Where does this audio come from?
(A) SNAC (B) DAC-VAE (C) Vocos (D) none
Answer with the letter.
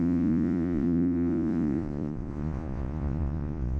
C